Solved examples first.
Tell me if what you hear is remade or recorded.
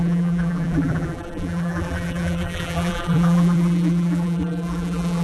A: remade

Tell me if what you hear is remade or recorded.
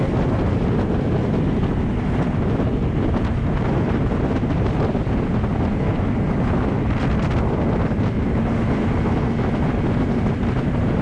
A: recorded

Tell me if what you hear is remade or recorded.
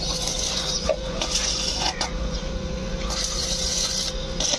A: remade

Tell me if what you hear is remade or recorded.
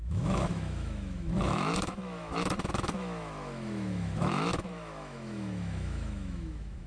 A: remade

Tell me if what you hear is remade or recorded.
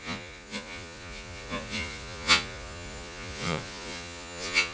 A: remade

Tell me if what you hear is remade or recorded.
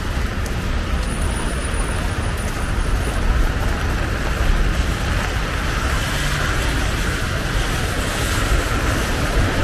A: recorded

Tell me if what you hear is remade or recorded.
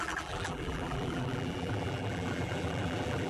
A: remade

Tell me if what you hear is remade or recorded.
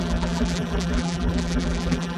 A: remade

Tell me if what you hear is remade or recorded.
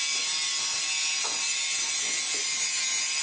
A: recorded